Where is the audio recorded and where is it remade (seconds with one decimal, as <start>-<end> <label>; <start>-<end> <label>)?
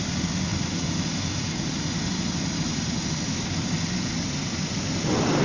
0.0-5.4 recorded